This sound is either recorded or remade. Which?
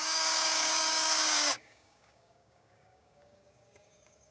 remade